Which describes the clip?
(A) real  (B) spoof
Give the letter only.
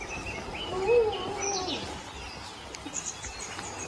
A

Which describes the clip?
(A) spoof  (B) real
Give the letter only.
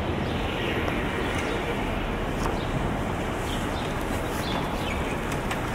B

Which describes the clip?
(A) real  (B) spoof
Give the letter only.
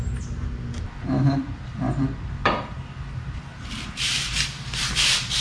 B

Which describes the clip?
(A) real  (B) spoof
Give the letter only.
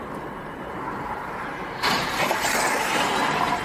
B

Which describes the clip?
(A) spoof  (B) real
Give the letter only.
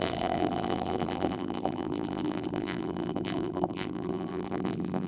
A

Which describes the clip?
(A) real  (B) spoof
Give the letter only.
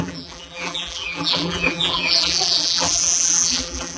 B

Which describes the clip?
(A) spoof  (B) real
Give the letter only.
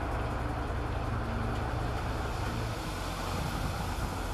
B